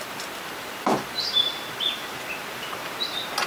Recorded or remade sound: remade